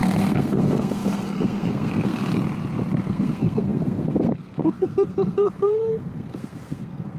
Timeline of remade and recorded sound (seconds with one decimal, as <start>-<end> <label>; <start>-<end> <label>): 0.0-2.3 remade; 2.3-3.0 recorded; 3.0-7.2 remade